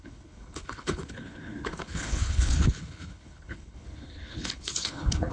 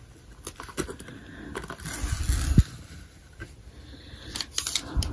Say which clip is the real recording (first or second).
second